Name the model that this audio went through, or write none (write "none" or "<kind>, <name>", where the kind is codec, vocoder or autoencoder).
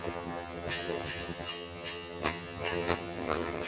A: vocoder, HiFi-GAN